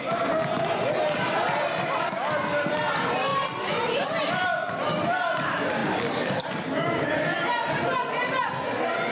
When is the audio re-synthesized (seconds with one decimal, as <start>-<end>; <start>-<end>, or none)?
none